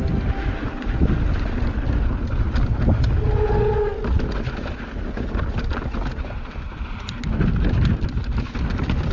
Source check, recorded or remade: recorded